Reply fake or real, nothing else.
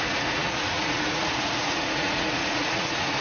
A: fake